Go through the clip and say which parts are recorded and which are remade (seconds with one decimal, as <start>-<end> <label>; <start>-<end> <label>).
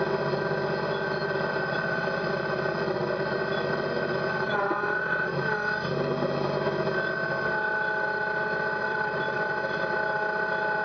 0.0-1.2 recorded; 1.2-4.5 remade; 4.5-8.8 recorded; 8.8-9.5 remade; 9.5-10.8 recorded